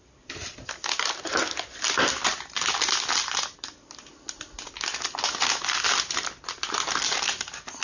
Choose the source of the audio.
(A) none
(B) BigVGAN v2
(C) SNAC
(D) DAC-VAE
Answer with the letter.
A